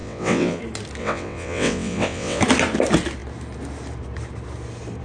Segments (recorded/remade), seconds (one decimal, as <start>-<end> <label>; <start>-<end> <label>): 0.0-0.6 remade; 0.6-1.0 recorded; 1.0-2.4 remade; 2.4-5.0 recorded